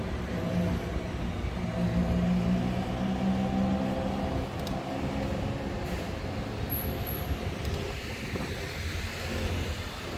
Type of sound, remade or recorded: recorded